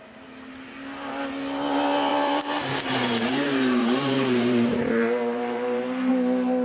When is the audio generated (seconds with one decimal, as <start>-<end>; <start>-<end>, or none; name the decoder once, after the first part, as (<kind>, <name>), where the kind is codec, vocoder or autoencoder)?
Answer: 2.1-6.1 (vocoder, BigVGAN v2)